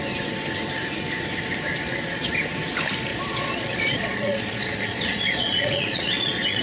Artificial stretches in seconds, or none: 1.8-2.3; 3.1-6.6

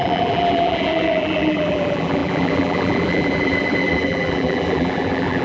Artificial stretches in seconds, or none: 0.0-5.4

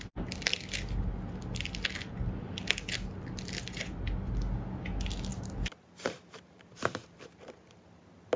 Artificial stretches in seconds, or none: 5.3-7.5

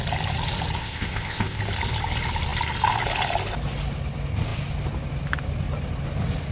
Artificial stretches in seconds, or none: 0.8-1.6

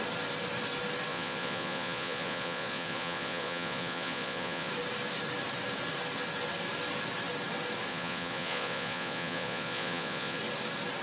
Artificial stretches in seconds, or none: 1.1-4.7; 7.9-10.4